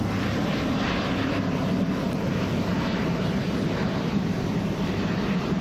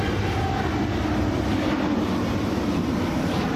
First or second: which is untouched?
second